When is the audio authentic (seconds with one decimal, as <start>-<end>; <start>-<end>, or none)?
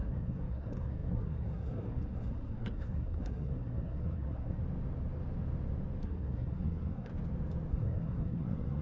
4.6-6.0; 7.1-7.7